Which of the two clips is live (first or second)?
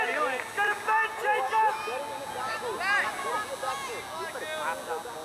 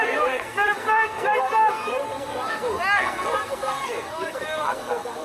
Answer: first